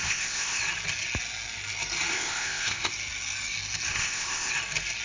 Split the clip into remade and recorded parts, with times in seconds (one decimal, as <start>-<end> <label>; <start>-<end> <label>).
0.0-0.6 remade; 0.6-2.1 recorded; 2.1-2.9 remade; 2.9-3.9 recorded; 3.9-4.5 remade; 4.5-5.0 recorded